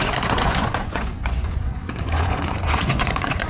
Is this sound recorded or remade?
remade